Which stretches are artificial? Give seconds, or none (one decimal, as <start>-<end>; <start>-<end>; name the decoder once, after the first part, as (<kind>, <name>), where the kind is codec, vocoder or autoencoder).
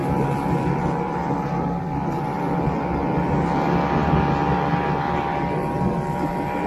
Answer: none